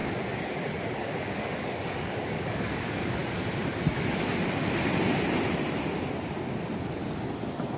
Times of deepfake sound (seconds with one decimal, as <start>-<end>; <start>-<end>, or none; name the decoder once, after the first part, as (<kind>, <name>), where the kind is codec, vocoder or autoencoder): 0.7-3.2 (codec, DAC)